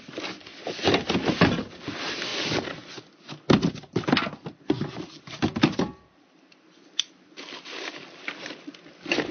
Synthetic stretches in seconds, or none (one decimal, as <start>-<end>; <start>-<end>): 0.0-0.5; 1.3-2.3; 3.7-9.3